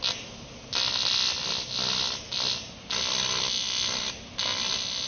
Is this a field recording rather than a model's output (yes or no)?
yes